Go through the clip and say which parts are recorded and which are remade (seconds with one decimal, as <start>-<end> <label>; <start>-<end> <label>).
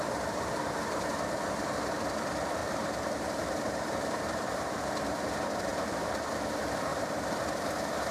0.0-2.6 recorded; 2.6-4.9 remade; 4.9-5.7 recorded; 5.7-6.3 remade; 6.3-6.9 recorded; 6.9-7.4 remade; 7.4-8.1 recorded